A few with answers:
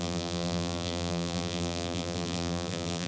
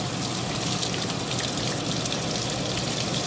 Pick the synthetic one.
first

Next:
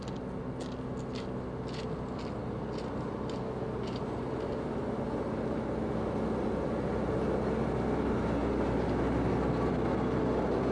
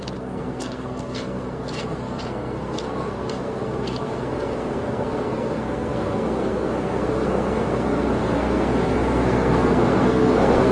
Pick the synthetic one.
second